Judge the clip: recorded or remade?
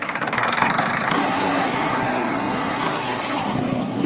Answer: remade